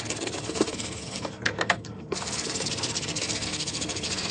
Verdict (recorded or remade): remade